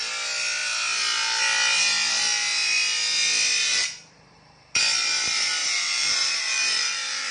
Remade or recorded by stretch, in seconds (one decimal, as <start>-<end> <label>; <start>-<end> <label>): 0.0-3.6 recorded; 3.6-4.8 remade; 4.8-5.6 recorded; 5.6-7.3 remade